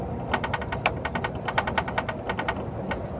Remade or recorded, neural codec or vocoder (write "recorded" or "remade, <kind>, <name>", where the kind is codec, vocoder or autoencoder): recorded